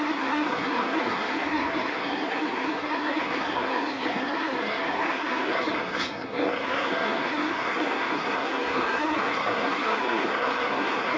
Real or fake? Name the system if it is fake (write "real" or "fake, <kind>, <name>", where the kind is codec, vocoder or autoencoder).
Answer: fake, codec, SNAC